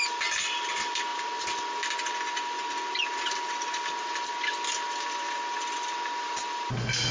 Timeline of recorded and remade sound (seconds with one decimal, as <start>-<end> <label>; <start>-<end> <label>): 0.0-7.1 recorded